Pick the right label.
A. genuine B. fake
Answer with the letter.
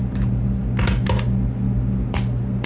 A